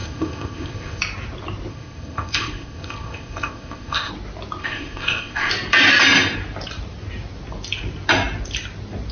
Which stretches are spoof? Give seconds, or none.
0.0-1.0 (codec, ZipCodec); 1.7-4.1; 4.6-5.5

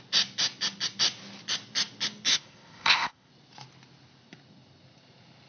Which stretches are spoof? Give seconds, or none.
2.3-3.3 (codec, ZipCodec)

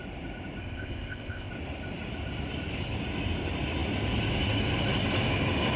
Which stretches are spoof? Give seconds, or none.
0.6-1.5 (codec, ZipCodec)